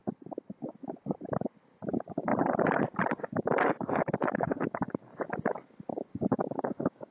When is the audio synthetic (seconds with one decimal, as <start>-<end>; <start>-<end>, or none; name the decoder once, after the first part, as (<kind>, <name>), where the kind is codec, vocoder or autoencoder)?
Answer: 1.9-2.3 (codec, DAC); 3.2-5.1; 5.9-7.1

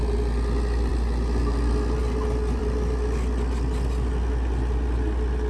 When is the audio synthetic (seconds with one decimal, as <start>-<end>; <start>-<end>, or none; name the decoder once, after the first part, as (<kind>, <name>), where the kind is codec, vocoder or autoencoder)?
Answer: none